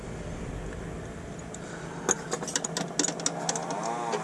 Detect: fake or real real